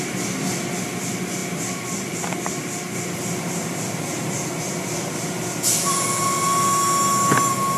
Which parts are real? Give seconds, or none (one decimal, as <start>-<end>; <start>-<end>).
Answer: 0.0-7.8